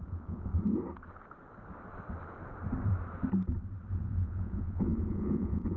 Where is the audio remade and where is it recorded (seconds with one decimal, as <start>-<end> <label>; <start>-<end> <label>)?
0.0-0.5 remade; 0.5-3.9 recorded; 3.9-5.8 remade